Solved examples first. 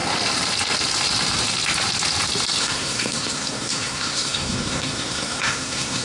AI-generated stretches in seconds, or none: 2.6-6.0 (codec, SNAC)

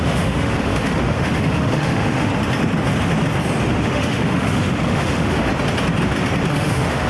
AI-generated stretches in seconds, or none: 0.0-2.3 (autoencoder, DAC-VAE); 3.8-5.5; 6.5-7.1

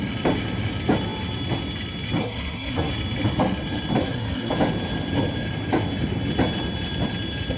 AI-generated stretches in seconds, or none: 2.2-2.9 (codec, SNAC); 4.0-4.5

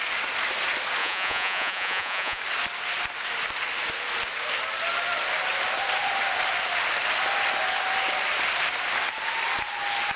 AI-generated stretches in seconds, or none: 1.0-2.4 (vocoder, Vocos)

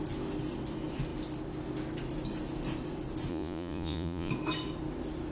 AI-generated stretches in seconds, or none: 3.3-4.3 (vocoder, Vocos)

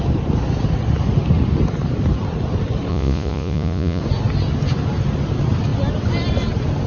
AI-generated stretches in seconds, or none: 2.9-4.0 (vocoder, Vocos)

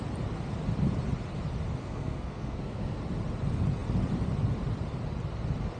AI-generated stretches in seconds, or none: 1.8-3.0 (codec, SNAC)

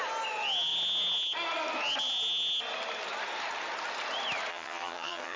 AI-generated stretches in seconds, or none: 4.5-5.4 (vocoder, HiFi-GAN)